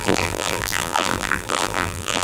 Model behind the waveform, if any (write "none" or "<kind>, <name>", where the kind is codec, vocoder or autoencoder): vocoder, BigVGAN v2